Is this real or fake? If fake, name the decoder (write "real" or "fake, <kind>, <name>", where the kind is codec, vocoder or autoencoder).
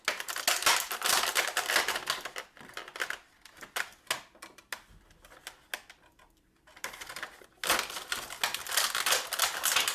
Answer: real